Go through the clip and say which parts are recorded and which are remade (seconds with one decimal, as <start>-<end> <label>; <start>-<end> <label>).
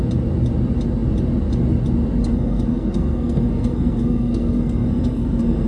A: 0.0-2.2 recorded; 2.2-5.7 remade